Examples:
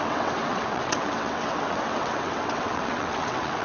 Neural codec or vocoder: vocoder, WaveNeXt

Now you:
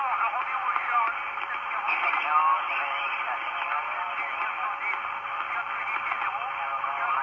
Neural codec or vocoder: none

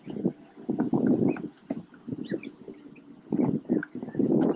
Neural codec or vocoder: none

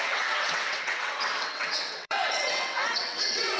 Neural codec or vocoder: vocoder, WaveNeXt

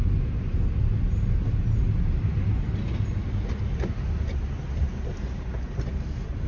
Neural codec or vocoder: none